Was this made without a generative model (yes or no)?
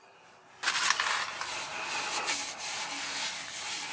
yes